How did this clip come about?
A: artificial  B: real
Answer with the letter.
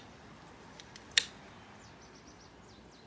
B